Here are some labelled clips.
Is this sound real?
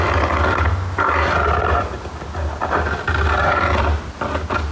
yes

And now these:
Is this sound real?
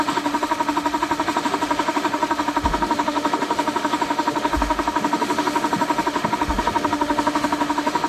no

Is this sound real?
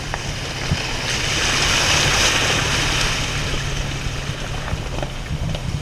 yes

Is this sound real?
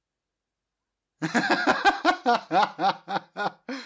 yes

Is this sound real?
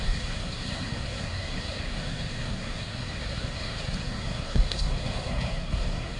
no